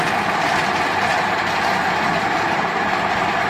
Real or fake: real